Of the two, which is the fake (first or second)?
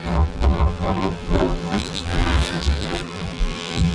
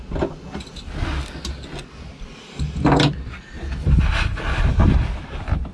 first